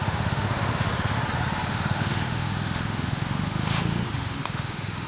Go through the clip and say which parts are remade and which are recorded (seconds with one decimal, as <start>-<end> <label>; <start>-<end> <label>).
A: 0.0-0.9 remade; 0.9-1.7 recorded; 1.7-5.1 remade